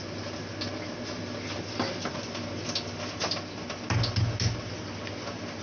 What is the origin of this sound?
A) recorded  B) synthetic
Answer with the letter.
A